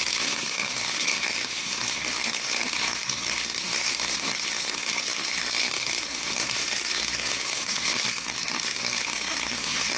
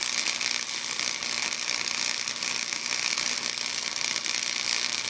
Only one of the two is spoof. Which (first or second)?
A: first